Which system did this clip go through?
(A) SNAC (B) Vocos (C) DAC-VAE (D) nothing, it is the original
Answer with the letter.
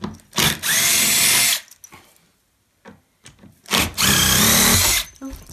D